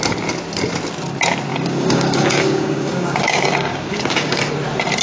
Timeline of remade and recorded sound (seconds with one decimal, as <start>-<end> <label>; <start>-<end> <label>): 0.0-1.5 recorded; 1.5-4.5 remade; 4.5-5.0 recorded